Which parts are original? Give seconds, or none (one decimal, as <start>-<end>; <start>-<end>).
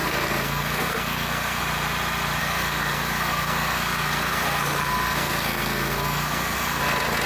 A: 1.6-2.4; 6.8-7.3